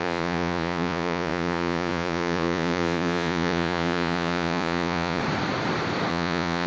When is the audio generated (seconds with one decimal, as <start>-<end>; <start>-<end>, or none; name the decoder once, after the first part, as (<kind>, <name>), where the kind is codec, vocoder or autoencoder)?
0.0-5.2 (vocoder, Vocos); 6.1-6.7